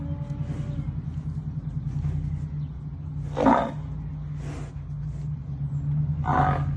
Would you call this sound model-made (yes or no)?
no